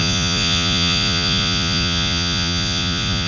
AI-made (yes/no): yes